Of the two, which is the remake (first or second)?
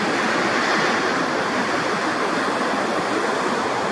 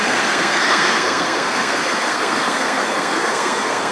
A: second